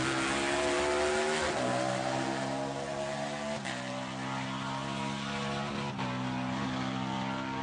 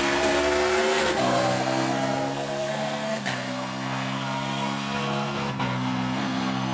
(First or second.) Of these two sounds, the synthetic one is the second